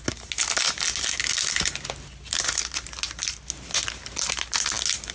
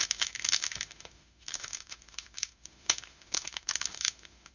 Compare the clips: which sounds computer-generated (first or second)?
second